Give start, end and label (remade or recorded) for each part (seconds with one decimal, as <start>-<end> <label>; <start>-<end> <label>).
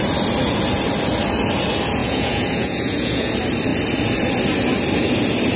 0.0-2.0 recorded; 2.0-3.3 remade; 3.3-5.6 recorded